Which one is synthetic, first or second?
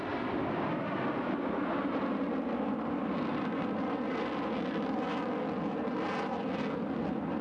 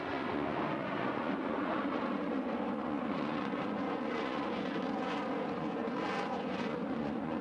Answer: second